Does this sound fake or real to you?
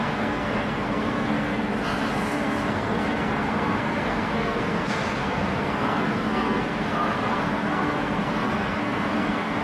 fake